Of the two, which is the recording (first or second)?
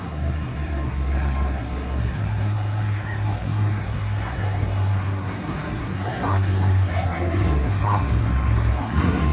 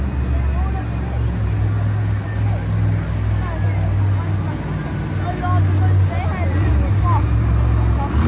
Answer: second